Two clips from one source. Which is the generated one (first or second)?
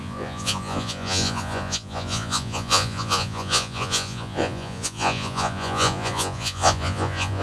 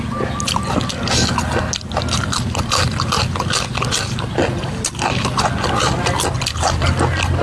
first